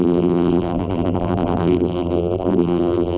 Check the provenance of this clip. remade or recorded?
remade